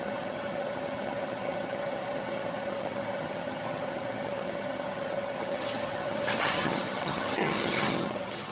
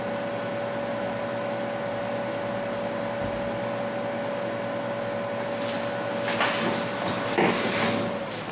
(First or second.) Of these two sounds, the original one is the second